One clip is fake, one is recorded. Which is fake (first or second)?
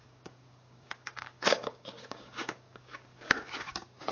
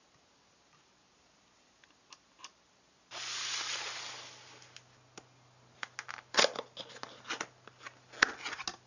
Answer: first